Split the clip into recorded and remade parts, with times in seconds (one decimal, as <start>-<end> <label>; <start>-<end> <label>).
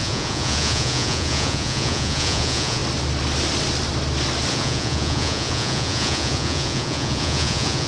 0.0-2.8 remade; 2.8-4.5 recorded; 4.5-7.9 remade